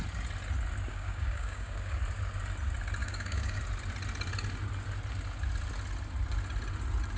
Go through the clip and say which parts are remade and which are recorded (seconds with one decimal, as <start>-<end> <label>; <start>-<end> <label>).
0.0-0.9 recorded; 0.9-2.0 remade; 2.0-3.0 recorded; 3.0-3.6 remade; 3.6-7.2 recorded